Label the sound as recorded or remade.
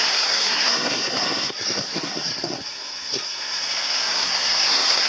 remade